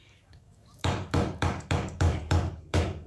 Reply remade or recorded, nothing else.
remade